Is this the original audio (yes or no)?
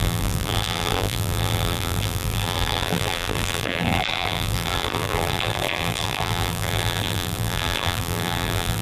no